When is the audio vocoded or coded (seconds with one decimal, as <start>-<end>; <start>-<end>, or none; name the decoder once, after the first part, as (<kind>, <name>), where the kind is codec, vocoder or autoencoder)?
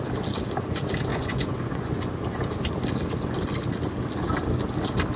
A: 1.1-1.9 (vocoder, Vocos)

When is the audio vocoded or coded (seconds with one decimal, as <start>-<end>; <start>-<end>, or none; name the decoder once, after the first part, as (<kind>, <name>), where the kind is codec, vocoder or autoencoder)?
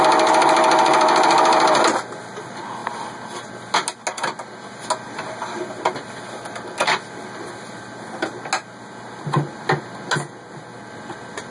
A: none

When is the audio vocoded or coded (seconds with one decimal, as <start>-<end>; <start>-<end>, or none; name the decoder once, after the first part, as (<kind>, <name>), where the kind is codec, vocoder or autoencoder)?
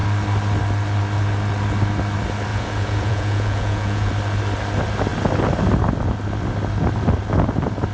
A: 2.5-4.1 (vocoder, Vocos)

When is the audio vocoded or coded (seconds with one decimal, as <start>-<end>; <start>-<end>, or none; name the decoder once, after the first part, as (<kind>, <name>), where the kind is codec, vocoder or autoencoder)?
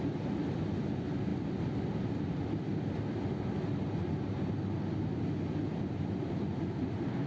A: none